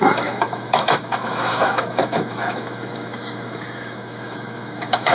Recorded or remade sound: remade